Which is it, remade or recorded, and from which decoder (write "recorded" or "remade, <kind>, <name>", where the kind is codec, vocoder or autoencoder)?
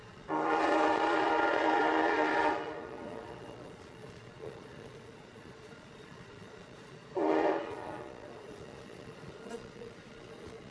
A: remade, vocoder, Vocos